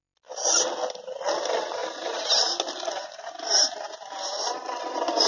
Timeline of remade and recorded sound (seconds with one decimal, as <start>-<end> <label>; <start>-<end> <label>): 0.0-5.3 recorded